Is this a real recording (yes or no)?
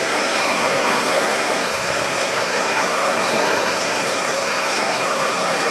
no